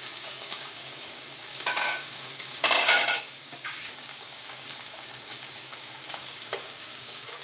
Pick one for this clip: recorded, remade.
remade